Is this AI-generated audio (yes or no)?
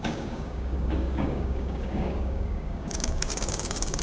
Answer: yes